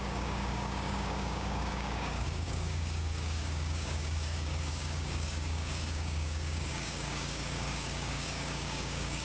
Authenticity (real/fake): fake